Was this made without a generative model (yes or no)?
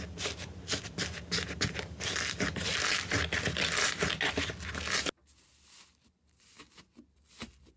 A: yes